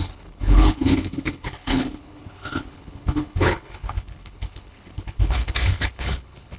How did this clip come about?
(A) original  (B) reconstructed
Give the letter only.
B